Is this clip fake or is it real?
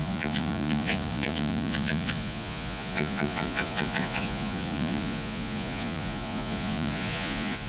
fake